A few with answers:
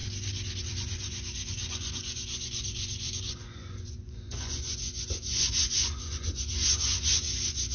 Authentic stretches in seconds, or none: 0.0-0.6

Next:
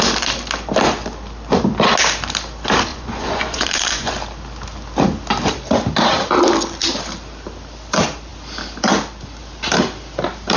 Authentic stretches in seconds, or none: 0.0-2.9; 4.1-10.6

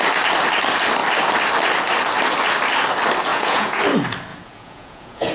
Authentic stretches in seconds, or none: 0.0-3.3; 3.8-4.3

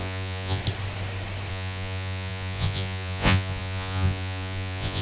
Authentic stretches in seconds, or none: 0.6-1.5

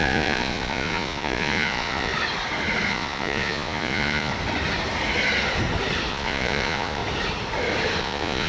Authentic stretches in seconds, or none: 2.1-2.9; 4.3-6.1; 7.0-8.0

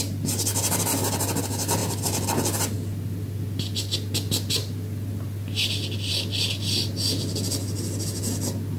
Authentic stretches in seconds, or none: 0.0-8.8